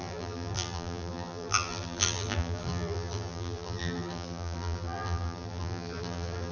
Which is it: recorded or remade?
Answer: remade